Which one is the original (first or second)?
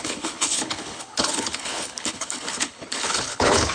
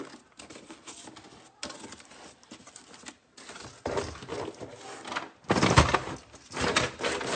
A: second